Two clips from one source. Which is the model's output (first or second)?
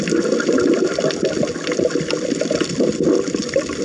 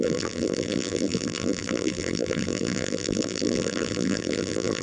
second